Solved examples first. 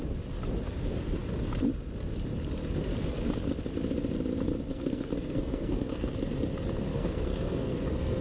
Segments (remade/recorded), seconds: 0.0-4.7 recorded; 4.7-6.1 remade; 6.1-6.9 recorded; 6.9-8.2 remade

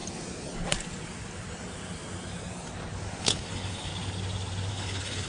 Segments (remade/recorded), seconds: 0.0-3.2 recorded; 3.2-3.9 remade; 3.9-4.7 recorded; 4.7-5.3 remade

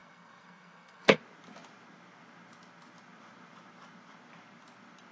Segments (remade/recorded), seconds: 0.0-1.2 remade; 1.2-5.1 recorded

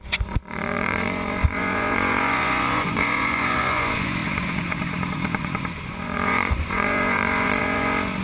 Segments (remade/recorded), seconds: 0.0-8.2 remade

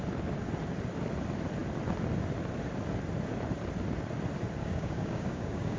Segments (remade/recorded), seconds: 0.0-4.6 recorded; 4.6-5.8 remade

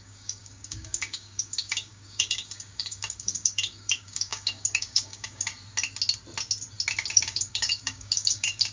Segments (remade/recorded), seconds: 0.0-5.5 remade; 5.5-7.1 recorded; 7.1-8.7 remade

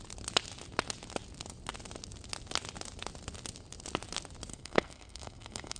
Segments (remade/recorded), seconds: 0.0-4.5 recorded; 4.5-5.8 remade

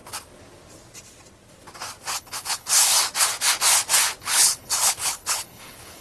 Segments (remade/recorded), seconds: 0.0-2.2 recorded; 2.2-2.8 remade; 2.8-4.2 recorded; 4.2-6.0 remade